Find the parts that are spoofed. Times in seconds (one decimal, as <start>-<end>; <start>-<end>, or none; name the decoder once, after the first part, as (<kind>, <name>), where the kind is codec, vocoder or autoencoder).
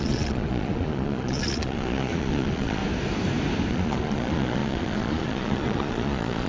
0.0-2.8 (vocoder, Vocos); 3.7-6.5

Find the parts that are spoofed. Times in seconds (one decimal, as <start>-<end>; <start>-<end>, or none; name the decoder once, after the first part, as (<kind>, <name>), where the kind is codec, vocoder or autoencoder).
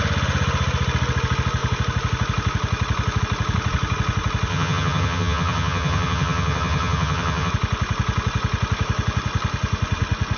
4.5-7.5 (vocoder, HiFi-GAN)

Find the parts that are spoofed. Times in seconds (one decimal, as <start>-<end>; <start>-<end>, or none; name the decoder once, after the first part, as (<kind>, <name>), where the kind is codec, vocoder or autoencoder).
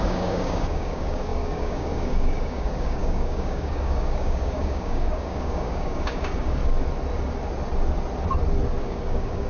0.0-6.6 (codec, DAC); 8.8-9.5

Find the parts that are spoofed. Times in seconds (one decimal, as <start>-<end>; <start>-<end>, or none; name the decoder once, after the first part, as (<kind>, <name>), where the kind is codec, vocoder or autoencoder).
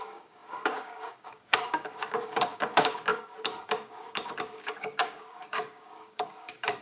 0.0-6.8 (codec, DAC)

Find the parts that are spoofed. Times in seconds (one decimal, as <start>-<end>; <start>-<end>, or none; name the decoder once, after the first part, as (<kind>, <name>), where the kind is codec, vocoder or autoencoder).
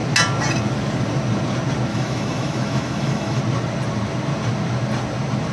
1.9-3.4 (autoencoder, DAC-VAE)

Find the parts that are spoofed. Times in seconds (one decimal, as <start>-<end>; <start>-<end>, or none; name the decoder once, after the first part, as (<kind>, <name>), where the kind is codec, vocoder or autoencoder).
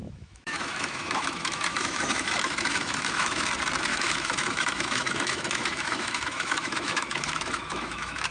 0.0-3.5 (autoencoder, DAC-VAE); 3.9-8.3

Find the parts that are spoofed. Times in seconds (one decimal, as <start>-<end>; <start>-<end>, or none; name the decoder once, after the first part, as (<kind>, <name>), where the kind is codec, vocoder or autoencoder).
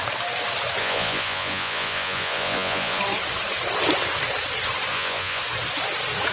0.8-3.0 (vocoder, Vocos); 4.9-5.4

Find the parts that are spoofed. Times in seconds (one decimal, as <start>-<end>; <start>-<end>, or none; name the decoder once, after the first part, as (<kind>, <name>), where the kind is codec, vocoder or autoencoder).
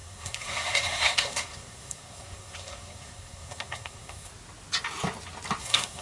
0.0-4.3 (codec, SNAC); 5.6-6.0